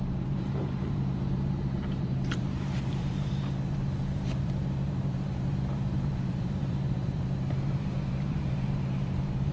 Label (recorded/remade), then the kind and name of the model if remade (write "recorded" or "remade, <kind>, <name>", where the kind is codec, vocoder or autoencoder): remade, vocoder, BigVGAN v2